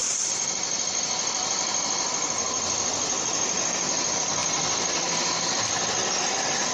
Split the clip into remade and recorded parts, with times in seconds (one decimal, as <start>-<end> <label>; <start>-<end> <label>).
0.0-4.4 recorded; 4.4-5.5 remade; 5.5-6.7 recorded